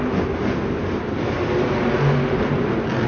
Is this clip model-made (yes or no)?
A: no